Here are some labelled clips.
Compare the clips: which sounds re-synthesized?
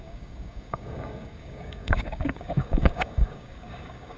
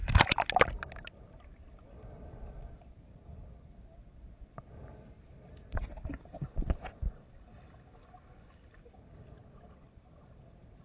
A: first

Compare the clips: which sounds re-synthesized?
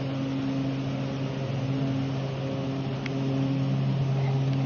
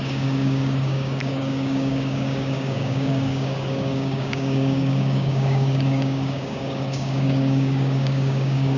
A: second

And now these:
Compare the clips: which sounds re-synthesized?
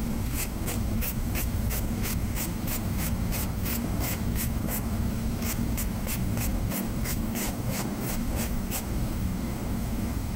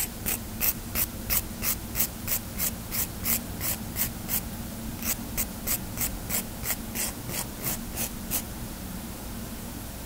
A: first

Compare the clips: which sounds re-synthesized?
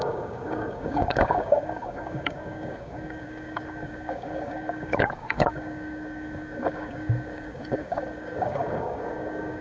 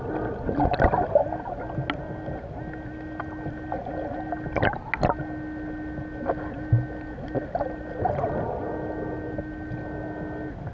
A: first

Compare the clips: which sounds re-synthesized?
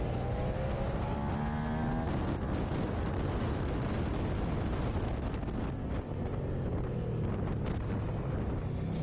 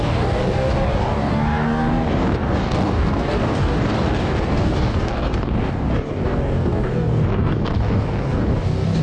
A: second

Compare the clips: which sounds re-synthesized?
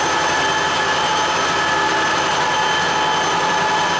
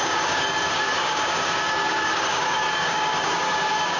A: second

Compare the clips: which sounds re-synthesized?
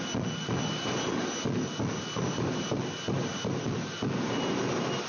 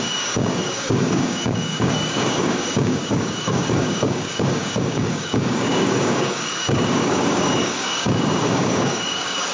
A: second